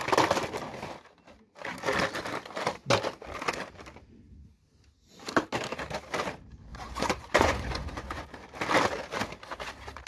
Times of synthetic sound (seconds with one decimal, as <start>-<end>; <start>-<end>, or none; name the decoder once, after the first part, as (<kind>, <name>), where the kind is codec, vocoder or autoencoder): 6.7-8.3 (vocoder, Vocos)